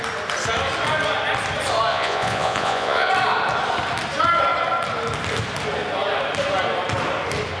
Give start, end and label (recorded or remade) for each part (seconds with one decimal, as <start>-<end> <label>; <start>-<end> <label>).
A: 0.0-1.9 recorded; 1.9-3.1 remade; 3.1-7.6 recorded